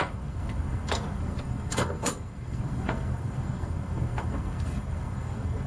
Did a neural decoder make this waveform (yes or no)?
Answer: yes